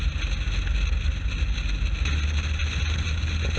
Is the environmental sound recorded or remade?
recorded